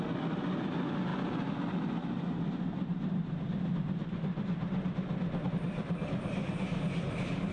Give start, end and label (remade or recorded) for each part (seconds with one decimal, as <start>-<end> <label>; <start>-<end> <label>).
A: 0.0-7.5 recorded